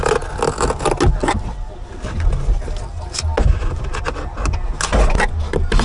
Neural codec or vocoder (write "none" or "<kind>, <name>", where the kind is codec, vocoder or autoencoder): none